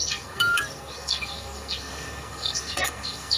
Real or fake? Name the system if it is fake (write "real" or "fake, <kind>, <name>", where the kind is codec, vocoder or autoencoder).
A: fake, codec, SNAC